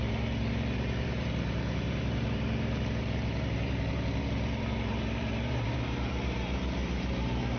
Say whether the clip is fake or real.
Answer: fake